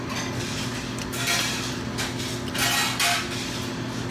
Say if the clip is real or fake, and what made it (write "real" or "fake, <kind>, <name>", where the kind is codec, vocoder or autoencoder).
real